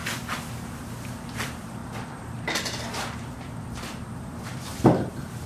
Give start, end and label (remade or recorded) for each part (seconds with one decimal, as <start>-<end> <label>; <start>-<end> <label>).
0.0-0.9 recorded; 0.9-5.5 remade